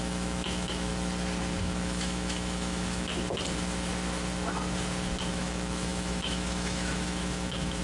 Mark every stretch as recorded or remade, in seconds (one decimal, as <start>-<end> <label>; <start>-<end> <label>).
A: 0.0-0.9 remade; 0.9-1.6 recorded; 1.6-3.1 remade; 3.1-5.3 recorded; 5.3-7.8 remade